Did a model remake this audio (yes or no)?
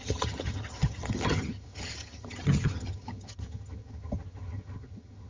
yes